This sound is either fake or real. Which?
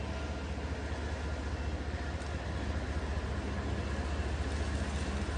real